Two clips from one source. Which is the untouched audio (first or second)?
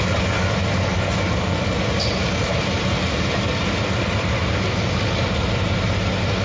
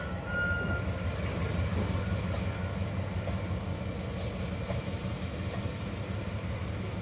second